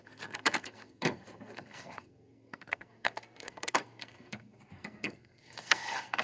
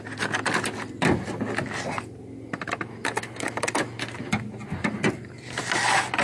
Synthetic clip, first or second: first